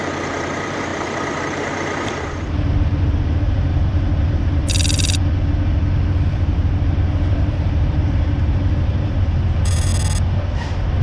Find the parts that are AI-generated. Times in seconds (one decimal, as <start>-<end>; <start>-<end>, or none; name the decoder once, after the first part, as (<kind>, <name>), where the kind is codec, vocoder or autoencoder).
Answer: 0.0-4.6 (vocoder, BigVGAN v2); 6.3-9.9